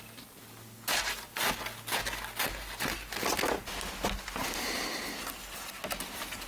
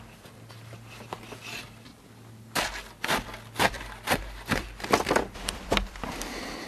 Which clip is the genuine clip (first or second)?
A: first